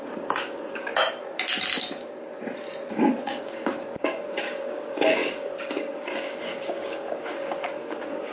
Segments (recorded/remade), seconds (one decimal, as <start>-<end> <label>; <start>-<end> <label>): 0.0-0.9 remade; 0.9-2.9 recorded; 2.9-8.3 remade